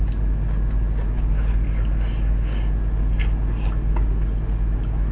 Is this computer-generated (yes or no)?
no